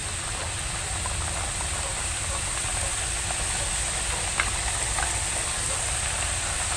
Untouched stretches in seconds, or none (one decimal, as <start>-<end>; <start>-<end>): 0.0-6.8